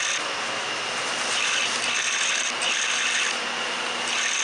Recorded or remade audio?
recorded